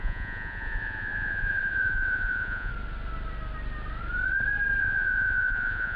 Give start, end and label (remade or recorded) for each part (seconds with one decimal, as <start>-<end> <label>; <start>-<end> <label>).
0.0-2.7 remade; 2.7-4.8 recorded; 4.8-6.0 remade